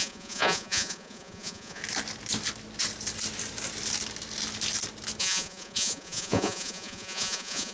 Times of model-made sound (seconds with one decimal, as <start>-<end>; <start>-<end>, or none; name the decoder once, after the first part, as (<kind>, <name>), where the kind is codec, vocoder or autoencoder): 0.0-1.8 (vocoder, Vocos); 5.2-7.7